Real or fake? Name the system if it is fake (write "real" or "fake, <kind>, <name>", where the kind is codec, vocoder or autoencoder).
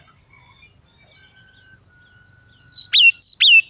real